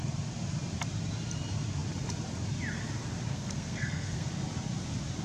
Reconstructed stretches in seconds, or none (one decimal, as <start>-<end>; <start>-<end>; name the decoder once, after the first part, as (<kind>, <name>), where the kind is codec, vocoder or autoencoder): 3.3-4.3 (codec, SNAC)